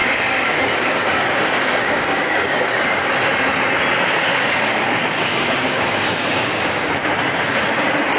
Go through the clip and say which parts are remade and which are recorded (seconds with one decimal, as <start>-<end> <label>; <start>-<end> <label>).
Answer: 0.0-3.1 remade; 3.1-4.3 recorded; 4.3-6.9 remade; 6.9-8.2 recorded